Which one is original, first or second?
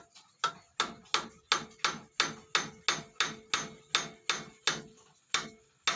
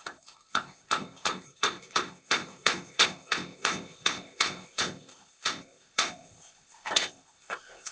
first